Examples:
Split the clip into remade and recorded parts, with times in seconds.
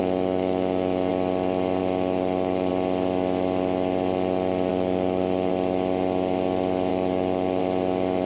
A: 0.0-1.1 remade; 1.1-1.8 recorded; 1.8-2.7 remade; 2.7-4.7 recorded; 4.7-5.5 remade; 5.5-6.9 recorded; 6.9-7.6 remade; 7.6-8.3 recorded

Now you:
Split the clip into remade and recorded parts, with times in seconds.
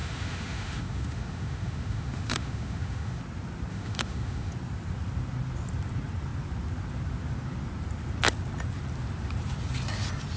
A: 0.0-3.2 remade; 3.2-3.7 recorded; 3.7-4.5 remade; 4.5-10.4 recorded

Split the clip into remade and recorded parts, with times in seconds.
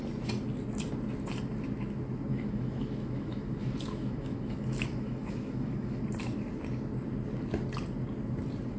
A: 0.0-2.3 recorded; 2.3-6.0 remade; 6.0-8.8 recorded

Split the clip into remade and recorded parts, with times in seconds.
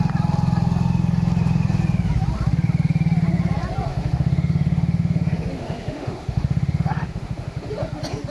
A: 0.0-3.9 recorded; 3.9-7.7 remade; 7.7-8.3 recorded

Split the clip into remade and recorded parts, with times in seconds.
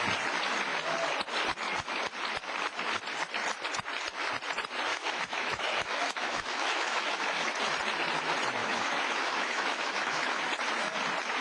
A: 0.0-4.9 recorded; 4.9-7.6 remade; 7.6-8.6 recorded; 8.6-10.4 remade; 10.4-11.4 recorded